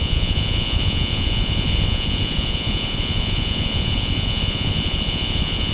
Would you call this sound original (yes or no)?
no